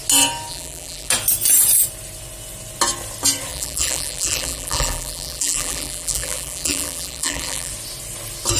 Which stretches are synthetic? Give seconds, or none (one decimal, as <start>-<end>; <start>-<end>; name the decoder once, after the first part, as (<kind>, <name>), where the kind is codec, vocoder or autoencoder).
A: 0.5-1.1 (vocoder, BigVGAN v2); 3.5-7.7